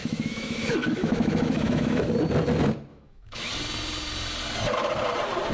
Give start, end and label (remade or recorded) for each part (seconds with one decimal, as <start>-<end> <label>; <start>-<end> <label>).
0.0-2.1 remade; 2.1-2.9 recorded; 2.9-3.5 remade; 3.5-5.5 recorded